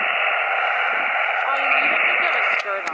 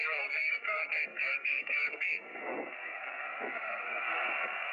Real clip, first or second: first